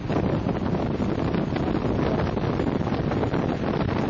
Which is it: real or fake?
real